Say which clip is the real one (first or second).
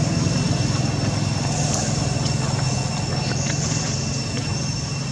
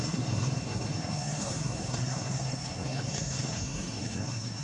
first